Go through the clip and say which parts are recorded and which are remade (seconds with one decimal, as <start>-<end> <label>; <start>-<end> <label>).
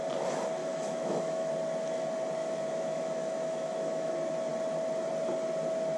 0.0-0.6 recorded; 0.6-1.5 remade; 1.5-2.4 recorded; 2.4-4.1 remade; 4.1-6.0 recorded